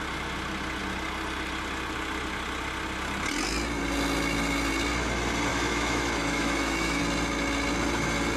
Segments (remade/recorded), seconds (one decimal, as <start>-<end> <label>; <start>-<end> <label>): 0.0-5.5 recorded; 5.5-7.0 remade; 7.0-8.4 recorded